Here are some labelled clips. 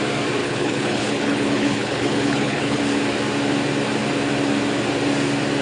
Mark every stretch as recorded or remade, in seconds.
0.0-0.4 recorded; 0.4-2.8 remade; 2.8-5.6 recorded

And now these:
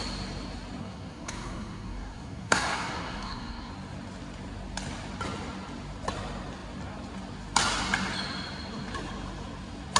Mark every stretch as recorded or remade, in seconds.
0.0-0.8 recorded; 0.8-3.7 remade; 3.7-10.0 recorded